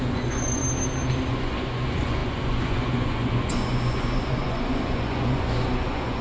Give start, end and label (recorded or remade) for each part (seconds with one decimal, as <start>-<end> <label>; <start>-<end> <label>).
0.0-0.6 remade; 0.6-1.3 recorded; 1.3-6.2 remade